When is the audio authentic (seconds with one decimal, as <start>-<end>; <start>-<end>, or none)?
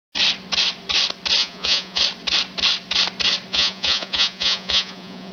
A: 0.0-1.4; 2.0-3.5